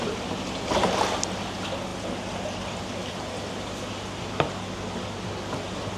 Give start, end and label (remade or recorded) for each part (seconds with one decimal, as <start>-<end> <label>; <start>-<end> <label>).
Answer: 0.0-6.0 recorded